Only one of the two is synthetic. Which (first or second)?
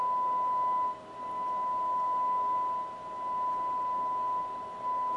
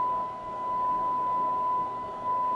second